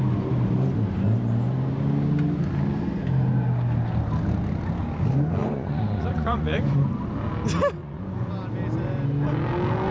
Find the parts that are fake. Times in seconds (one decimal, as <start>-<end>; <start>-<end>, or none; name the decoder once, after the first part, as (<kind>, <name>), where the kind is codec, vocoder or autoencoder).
5.4-6.9 (vocoder, Vocos); 7.8-8.3